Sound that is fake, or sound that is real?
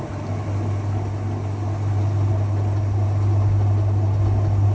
real